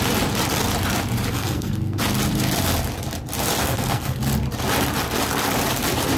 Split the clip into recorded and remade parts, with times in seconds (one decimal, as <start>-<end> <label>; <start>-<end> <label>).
0.0-1.3 recorded; 1.3-2.0 remade; 2.0-3.6 recorded; 3.6-4.2 remade; 4.2-6.2 recorded